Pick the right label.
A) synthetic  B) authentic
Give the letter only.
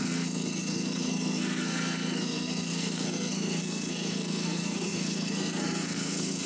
A